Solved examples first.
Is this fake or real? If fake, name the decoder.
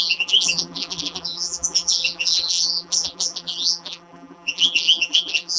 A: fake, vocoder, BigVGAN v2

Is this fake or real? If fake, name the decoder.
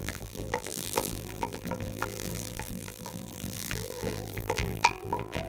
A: fake, vocoder, BigVGAN v2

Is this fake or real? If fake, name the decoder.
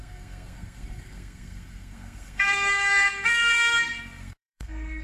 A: fake, codec, SNAC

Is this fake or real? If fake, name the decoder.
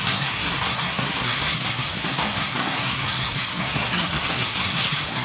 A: fake, codec, SNAC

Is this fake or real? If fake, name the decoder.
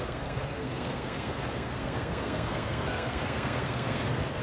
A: fake, codec, SNAC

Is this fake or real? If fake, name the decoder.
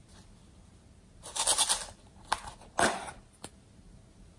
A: real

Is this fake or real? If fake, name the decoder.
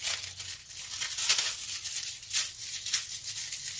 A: real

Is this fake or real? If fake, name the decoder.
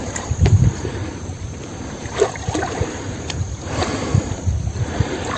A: fake, vocoder, BigVGAN v2